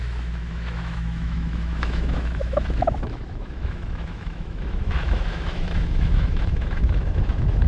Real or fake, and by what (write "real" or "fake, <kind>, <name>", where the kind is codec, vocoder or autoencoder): fake, autoencoder, DAC-VAE